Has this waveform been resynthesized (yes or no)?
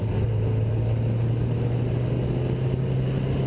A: no